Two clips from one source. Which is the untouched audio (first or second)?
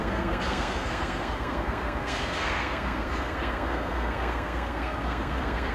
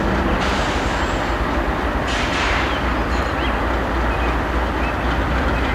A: second